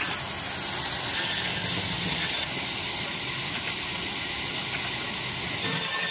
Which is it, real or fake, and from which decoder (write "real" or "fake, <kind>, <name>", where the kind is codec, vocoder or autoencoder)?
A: real